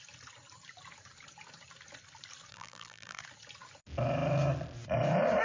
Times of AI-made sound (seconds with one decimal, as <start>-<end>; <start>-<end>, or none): 2.5-3.2